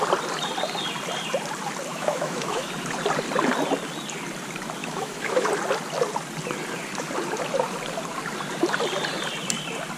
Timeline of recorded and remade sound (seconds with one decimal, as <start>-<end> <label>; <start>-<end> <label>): 0.0-1.9 recorded; 1.9-2.7 remade; 2.7-4.8 recorded; 4.8-5.5 remade; 5.5-10.0 recorded

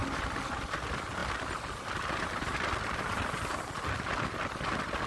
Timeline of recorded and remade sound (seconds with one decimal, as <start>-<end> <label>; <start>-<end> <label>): 0.0-5.1 recorded

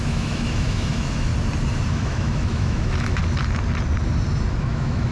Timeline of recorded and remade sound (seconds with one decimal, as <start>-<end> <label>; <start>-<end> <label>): 0.0-1.3 remade; 1.3-1.9 recorded; 1.9-3.2 remade; 3.2-4.6 recorded; 4.6-5.1 remade